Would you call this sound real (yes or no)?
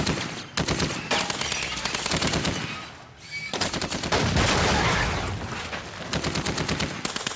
yes